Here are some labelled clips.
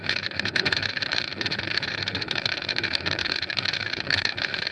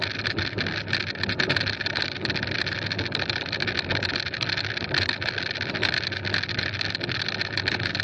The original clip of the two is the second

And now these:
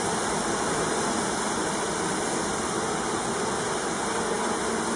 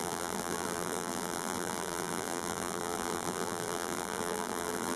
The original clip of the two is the first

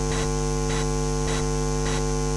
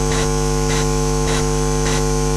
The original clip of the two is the first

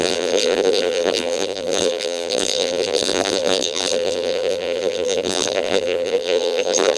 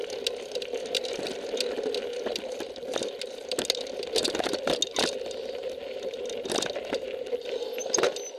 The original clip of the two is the second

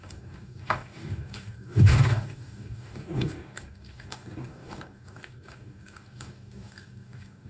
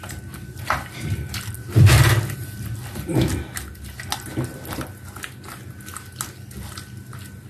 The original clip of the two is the second